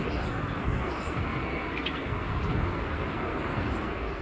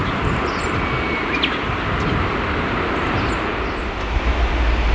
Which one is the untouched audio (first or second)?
second